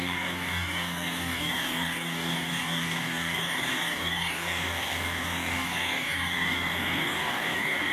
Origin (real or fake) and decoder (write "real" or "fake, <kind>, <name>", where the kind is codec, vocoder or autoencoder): fake, codec, DAC